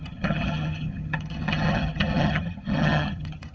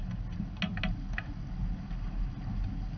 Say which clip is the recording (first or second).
second